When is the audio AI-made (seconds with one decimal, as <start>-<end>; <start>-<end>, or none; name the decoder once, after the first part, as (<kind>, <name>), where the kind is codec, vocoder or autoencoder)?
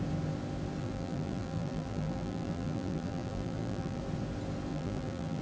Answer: 0.8-4.0 (vocoder, BigVGAN v2); 4.7-5.4